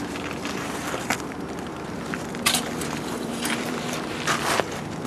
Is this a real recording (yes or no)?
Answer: no